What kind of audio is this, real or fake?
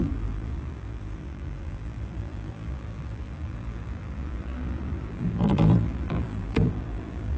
fake